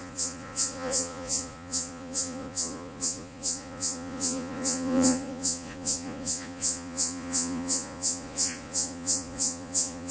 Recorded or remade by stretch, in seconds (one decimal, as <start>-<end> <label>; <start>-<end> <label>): 0.0-10.1 remade